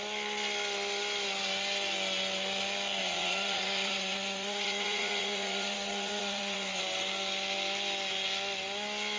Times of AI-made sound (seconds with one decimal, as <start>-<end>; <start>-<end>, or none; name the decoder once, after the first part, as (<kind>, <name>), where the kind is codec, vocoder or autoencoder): 3.0-6.8 (vocoder, Vocos)